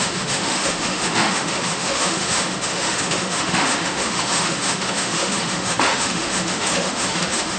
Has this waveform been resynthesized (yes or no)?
yes